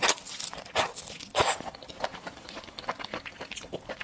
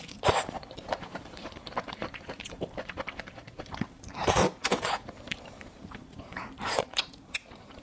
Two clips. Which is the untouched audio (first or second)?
first